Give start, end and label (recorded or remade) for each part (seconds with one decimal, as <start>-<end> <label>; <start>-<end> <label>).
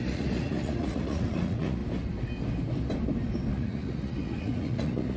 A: 0.0-1.8 remade; 1.8-3.5 recorded; 3.5-5.2 remade